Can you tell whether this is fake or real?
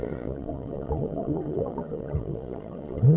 fake